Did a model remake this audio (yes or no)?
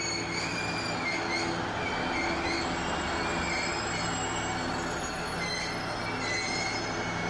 no